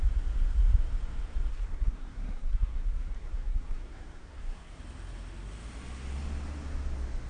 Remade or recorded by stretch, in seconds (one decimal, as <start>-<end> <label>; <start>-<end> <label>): 0.0-1.5 recorded; 1.5-4.8 remade; 4.8-7.3 recorded